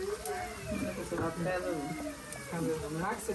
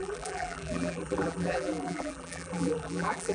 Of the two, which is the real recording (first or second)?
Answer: first